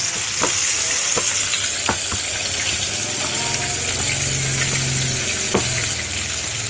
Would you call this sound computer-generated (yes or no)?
no